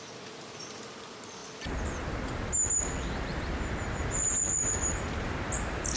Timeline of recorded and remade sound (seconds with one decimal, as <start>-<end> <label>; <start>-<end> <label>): 0.0-6.0 recorded